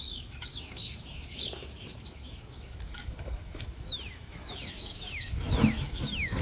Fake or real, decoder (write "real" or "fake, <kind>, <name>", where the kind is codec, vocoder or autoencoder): fake, autoencoder, DAC-VAE